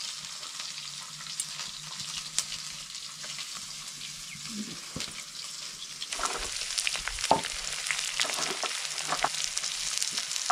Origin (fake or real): real